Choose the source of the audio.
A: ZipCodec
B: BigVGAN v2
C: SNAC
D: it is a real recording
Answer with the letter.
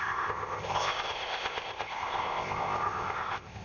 A